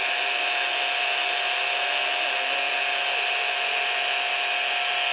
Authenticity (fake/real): real